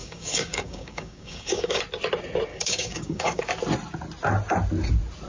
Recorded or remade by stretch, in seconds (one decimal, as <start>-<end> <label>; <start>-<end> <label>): 0.0-1.8 remade; 1.8-2.5 recorded; 2.5-3.4 remade; 3.4-5.3 recorded